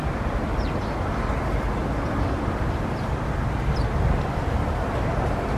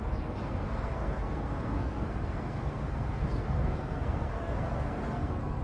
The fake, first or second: second